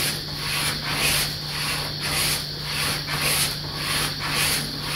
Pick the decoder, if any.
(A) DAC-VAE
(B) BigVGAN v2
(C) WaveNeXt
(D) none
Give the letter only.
D